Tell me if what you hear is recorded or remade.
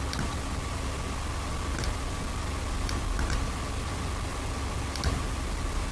recorded